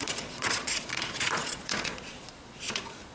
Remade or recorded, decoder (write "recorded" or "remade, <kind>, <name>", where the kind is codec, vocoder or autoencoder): remade, vocoder, Vocos